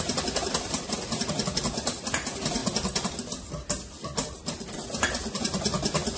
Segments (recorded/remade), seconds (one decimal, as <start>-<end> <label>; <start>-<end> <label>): 0.0-6.2 recorded